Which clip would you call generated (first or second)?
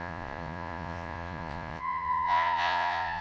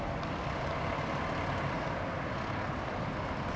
first